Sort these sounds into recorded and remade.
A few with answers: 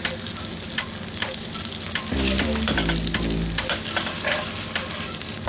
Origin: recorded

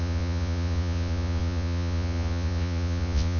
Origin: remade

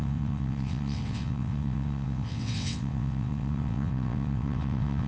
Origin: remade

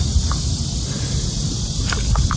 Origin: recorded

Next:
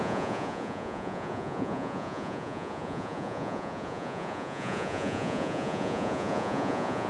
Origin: remade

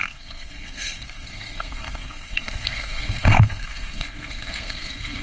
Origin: remade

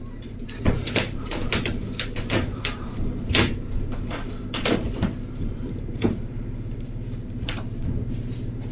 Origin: remade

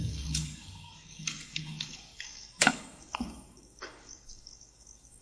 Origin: remade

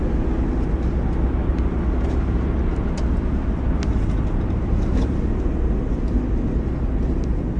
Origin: recorded